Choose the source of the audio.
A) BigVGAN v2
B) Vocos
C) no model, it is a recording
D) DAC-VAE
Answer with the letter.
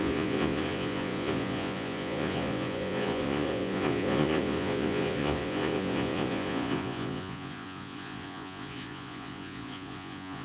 B